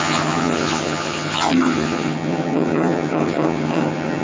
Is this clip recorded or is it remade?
remade